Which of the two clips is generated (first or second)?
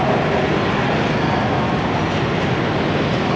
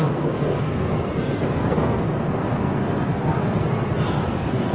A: second